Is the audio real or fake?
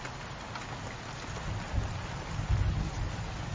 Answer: real